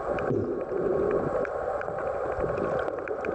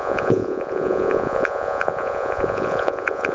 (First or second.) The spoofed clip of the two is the second